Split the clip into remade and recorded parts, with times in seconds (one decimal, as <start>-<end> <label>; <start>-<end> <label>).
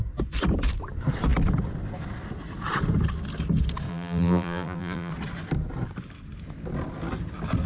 0.0-3.9 recorded; 3.9-5.1 remade; 5.1-7.7 recorded